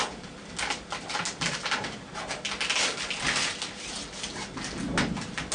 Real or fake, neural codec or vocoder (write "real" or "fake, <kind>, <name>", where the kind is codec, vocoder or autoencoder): real